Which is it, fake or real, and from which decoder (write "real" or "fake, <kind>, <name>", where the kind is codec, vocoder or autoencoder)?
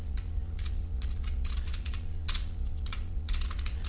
fake, vocoder, Vocos